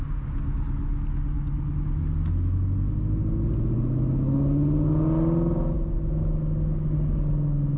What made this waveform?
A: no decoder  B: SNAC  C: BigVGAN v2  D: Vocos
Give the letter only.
A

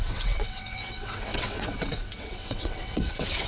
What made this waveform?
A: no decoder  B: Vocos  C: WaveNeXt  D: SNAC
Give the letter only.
C